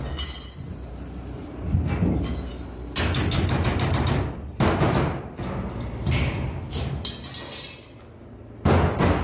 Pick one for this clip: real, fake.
real